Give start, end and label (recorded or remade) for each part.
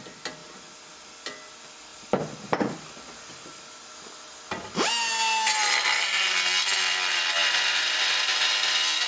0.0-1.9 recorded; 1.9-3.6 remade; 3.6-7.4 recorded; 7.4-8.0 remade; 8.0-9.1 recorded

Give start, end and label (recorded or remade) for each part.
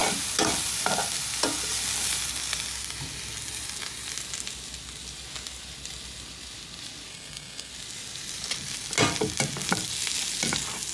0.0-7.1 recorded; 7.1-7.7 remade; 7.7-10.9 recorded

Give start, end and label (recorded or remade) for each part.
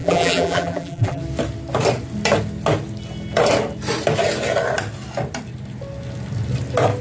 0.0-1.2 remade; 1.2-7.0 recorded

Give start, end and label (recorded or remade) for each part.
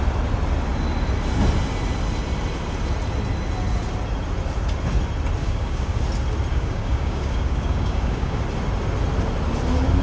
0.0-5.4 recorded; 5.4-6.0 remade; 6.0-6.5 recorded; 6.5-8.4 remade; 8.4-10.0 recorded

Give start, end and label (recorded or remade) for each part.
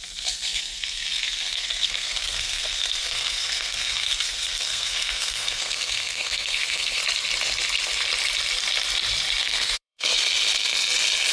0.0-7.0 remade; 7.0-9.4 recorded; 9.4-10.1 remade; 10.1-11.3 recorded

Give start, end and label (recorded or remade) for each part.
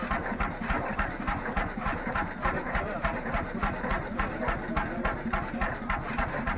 0.0-3.9 remade; 3.9-6.6 recorded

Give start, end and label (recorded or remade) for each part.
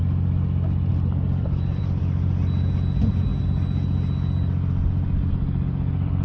0.0-3.3 remade; 3.3-5.3 recorded; 5.3-6.2 remade